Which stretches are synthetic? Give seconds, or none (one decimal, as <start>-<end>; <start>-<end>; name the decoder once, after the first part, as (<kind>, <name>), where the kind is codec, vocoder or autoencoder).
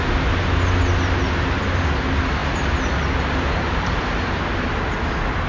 none